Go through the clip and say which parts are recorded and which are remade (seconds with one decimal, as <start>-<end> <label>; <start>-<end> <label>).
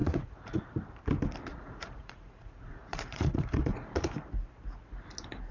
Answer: 0.0-0.6 remade; 0.6-1.5 recorded; 1.5-4.1 remade; 4.1-5.5 recorded